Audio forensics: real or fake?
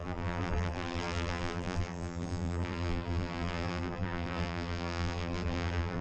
fake